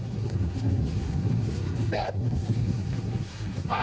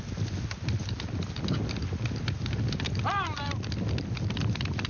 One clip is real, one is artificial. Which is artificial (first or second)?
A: first